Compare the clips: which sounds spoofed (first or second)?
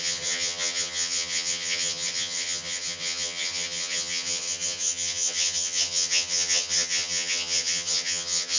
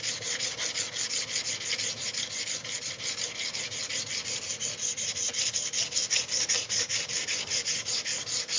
first